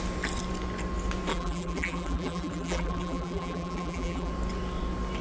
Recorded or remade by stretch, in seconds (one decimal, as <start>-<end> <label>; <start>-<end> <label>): 0.0-1.3 recorded; 1.3-4.3 remade; 4.3-5.2 recorded